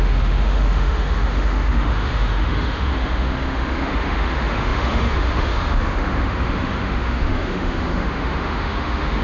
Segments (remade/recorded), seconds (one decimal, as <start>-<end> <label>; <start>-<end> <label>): 0.0-9.2 remade